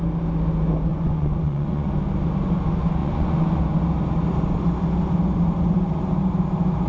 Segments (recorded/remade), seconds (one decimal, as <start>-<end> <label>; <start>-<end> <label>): 0.0-0.9 recorded; 0.9-1.9 remade; 1.9-3.0 recorded; 3.0-3.6 remade; 3.6-6.9 recorded